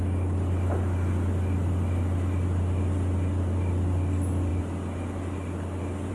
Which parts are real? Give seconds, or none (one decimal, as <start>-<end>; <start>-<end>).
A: 0.0-6.1